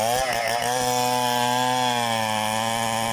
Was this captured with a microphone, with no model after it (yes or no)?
yes